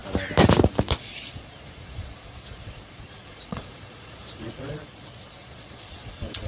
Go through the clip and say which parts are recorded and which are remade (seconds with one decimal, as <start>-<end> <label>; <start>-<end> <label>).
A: 0.0-1.0 recorded; 1.0-6.5 remade